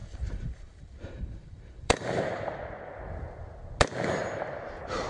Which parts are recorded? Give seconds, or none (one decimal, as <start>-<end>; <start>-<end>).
2.2-5.1